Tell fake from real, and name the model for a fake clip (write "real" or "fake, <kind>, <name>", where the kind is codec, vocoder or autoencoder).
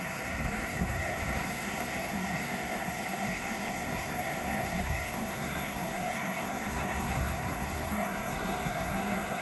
fake, codec, SNAC